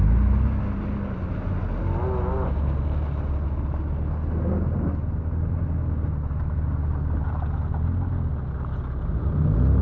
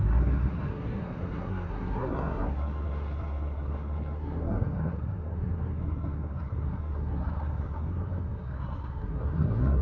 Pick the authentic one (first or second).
first